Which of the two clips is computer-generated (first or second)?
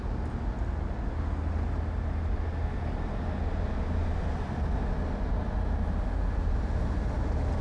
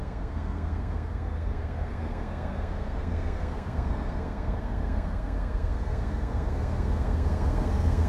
second